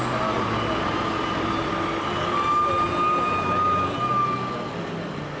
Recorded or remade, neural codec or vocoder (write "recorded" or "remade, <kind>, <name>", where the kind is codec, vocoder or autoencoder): recorded